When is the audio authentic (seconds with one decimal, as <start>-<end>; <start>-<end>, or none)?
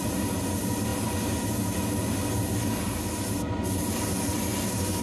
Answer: 0.0-5.0